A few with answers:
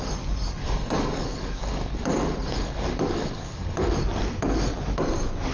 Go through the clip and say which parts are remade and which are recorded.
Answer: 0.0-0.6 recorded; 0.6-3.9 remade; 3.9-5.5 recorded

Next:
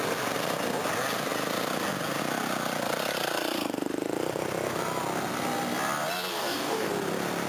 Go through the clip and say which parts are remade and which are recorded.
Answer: 0.0-6.3 recorded; 6.3-6.9 remade; 6.9-7.5 recorded

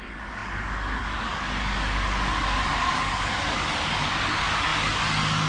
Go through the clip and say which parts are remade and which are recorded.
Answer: 0.0-5.5 remade

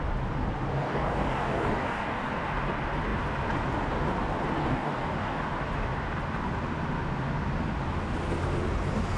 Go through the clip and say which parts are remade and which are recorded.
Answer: 0.0-0.7 recorded; 0.7-2.3 remade; 2.3-4.6 recorded; 4.6-5.4 remade; 5.4-9.2 recorded

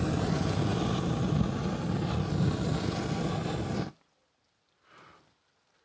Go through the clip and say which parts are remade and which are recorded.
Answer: 0.0-5.8 recorded